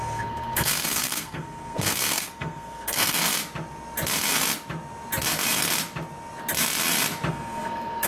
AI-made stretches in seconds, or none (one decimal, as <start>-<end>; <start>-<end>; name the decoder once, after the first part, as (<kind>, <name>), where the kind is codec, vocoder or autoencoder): 0.0-3.2 (codec, SNAC); 7.3-8.1